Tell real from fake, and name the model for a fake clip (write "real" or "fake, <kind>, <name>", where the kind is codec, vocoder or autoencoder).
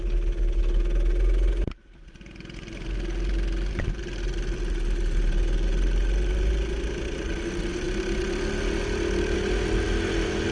real